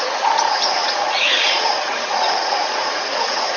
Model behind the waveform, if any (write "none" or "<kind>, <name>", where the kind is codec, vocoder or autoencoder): vocoder, Vocos